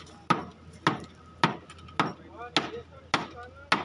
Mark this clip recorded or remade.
recorded